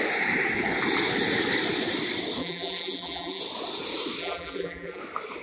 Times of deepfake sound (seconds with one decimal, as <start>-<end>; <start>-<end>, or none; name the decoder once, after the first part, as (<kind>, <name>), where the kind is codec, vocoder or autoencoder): 2.4-3.4 (vocoder, BigVGAN v2); 4.2-5.0